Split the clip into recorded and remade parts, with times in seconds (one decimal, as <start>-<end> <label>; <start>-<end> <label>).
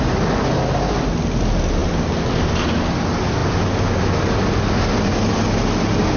0.0-6.2 recorded